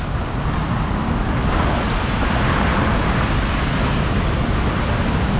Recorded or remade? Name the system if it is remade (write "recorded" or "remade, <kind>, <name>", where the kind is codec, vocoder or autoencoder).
recorded